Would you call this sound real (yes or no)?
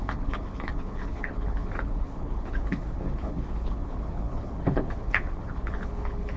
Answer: no